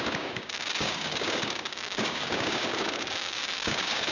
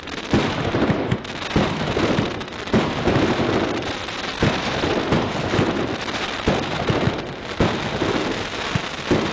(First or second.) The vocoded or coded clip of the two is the first